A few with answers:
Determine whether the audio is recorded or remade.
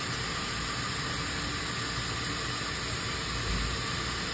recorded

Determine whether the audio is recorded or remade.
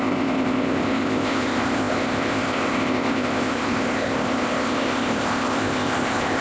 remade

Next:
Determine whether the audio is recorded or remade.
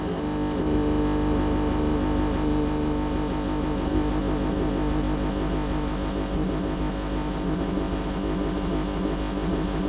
remade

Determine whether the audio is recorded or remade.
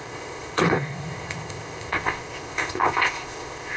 remade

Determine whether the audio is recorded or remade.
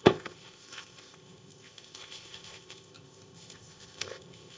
remade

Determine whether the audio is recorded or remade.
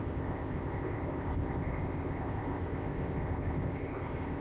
remade